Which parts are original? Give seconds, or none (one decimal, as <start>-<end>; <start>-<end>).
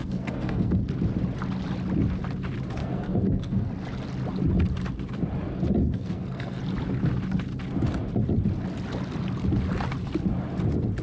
0.8-2.8; 3.7-5.8; 6.6-11.0